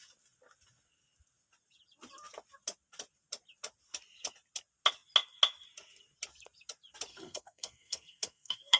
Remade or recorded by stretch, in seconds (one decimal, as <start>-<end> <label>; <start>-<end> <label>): 0.0-7.1 recorded; 7.1-8.8 remade